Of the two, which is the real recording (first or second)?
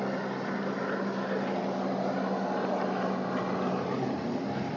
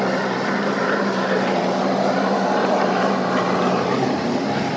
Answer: first